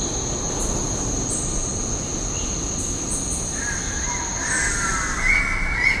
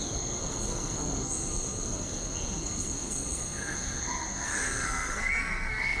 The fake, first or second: second